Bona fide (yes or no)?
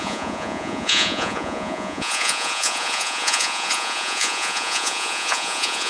no